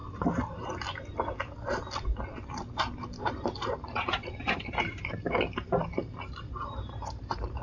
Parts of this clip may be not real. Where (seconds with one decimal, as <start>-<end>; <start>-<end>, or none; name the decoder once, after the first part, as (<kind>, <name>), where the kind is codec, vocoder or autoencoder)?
3.3-7.6 (vocoder, BigVGAN v2)